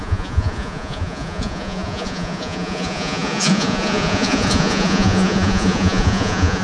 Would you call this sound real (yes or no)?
no